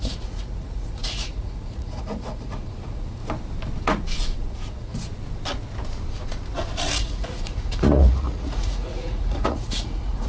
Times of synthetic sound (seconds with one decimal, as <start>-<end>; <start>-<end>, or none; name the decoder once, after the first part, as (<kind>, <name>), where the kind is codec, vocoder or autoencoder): 0.0-3.2 (vocoder, Vocos); 3.8-4.9; 7.0-10.3